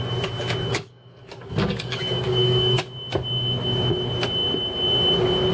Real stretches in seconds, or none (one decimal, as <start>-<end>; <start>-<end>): 0.0-0.7; 2.8-5.5